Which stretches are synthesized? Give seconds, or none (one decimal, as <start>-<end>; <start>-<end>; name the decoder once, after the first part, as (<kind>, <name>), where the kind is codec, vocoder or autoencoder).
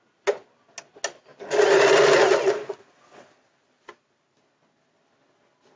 none